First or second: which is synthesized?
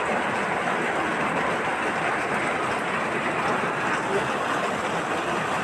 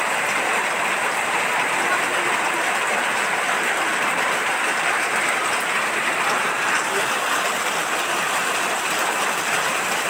second